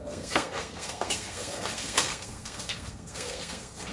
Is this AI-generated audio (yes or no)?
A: yes